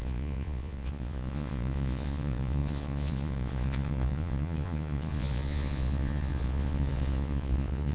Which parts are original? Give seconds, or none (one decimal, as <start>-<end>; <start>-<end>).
none